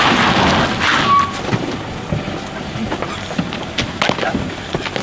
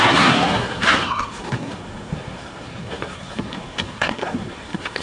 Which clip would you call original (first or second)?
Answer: first